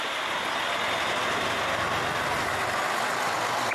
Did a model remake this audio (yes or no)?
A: no